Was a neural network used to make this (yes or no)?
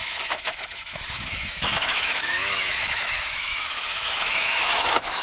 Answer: yes